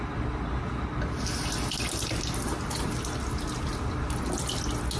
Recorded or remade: recorded